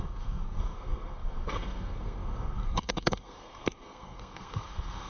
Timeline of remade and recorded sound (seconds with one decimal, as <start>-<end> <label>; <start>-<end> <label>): 0.0-5.1 remade

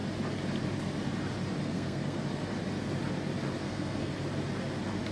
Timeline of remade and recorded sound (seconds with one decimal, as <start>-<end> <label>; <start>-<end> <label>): 0.0-1.6 recorded; 1.6-2.2 remade; 2.2-3.6 recorded; 3.6-4.1 remade; 4.1-5.1 recorded

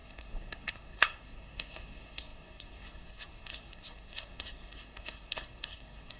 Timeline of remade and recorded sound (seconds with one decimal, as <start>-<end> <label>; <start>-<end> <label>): 0.0-6.2 remade